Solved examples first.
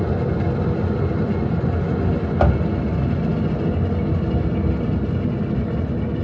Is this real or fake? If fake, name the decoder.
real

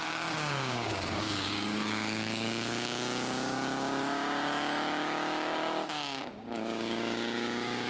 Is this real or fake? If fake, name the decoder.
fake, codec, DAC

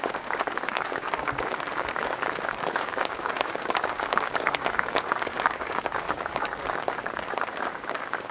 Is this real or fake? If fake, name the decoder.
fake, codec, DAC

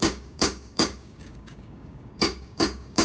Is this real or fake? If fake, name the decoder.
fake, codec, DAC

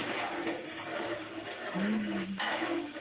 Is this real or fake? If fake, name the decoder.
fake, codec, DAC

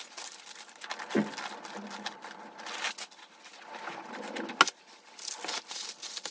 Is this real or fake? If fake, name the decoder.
real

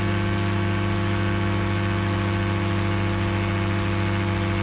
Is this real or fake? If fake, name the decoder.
real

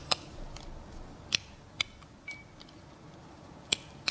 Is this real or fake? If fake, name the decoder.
real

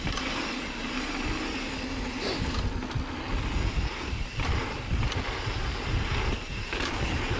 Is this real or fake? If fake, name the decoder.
real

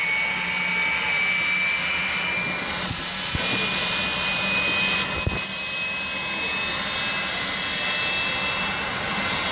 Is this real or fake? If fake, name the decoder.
real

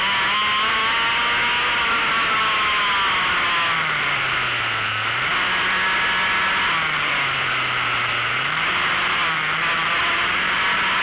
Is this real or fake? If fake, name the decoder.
real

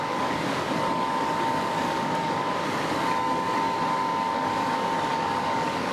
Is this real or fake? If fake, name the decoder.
fake, codec, DAC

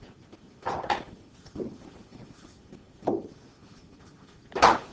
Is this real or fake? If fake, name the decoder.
real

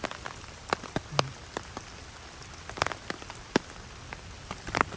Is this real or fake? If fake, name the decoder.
real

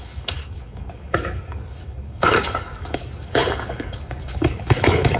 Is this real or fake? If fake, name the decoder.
fake, codec, DAC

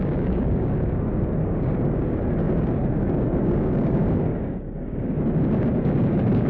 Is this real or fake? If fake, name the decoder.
fake, codec, DAC